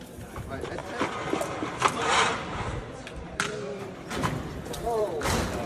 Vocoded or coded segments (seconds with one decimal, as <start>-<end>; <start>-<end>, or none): 0.0-0.8; 3.4-5.7